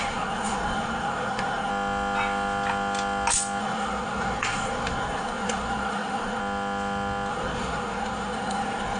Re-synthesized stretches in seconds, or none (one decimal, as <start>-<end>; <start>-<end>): 0.0-1.7; 3.6-6.4; 7.3-9.0